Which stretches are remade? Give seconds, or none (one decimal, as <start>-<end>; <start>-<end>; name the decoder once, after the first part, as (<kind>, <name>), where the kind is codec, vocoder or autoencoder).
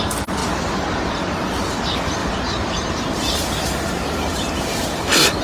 0.4-1.1 (vocoder, BigVGAN v2); 2.2-5.4